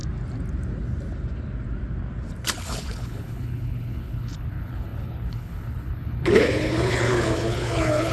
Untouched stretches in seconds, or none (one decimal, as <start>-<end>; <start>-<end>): 0.0-2.6

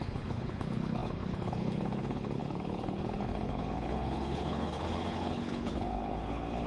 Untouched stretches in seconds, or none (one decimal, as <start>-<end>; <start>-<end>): none

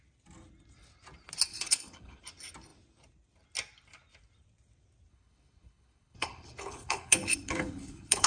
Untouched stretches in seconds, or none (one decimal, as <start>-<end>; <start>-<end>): 0.0-1.5; 2.2-5.1

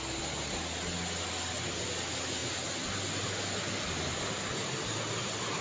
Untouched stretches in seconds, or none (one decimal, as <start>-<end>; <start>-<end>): 0.0-5.6

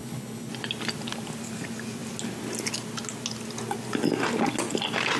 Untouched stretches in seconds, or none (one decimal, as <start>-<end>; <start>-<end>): 0.5-5.2

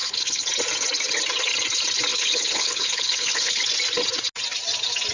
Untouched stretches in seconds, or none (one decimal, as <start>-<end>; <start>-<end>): 0.5-2.1; 3.6-5.1

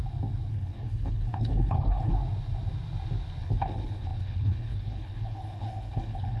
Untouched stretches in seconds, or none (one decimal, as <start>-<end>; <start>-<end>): 0.0-0.5; 2.1-3.4

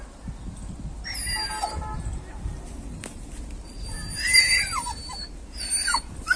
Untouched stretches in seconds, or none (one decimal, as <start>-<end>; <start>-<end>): 0.0-6.4